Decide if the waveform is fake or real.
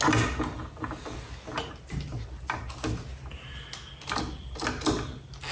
real